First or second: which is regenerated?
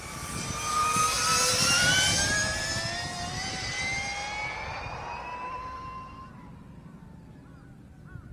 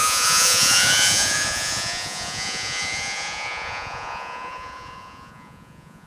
second